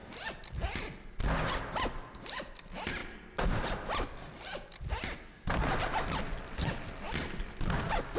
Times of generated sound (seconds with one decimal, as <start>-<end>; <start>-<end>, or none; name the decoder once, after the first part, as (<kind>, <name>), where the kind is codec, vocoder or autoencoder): none